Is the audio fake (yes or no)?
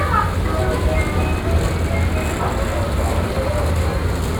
no